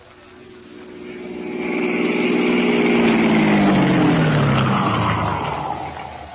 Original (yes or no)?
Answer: yes